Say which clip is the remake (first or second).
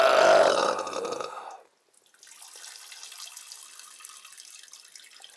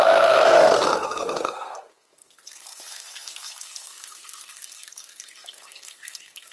second